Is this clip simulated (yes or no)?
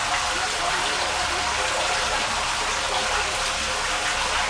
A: no